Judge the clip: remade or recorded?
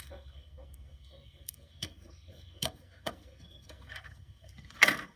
remade